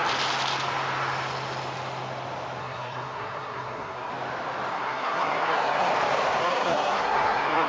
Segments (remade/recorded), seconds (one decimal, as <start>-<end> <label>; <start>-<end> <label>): 0.0-2.6 recorded; 2.6-4.1 remade; 4.1-4.7 recorded; 4.7-5.9 remade; 5.9-6.4 recorded; 6.4-7.7 remade